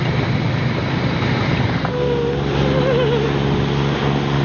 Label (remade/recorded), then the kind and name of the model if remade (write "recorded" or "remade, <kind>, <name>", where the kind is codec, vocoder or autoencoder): recorded